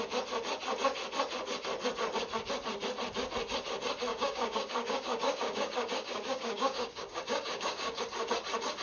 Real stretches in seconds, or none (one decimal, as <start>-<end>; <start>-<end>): 0.0-4.1; 8.0-8.8